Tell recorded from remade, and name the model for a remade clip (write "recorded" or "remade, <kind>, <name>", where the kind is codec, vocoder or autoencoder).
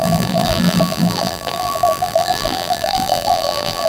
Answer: remade, vocoder, BigVGAN v2